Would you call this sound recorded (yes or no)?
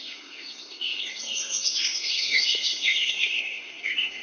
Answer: no